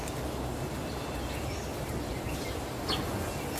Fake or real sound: real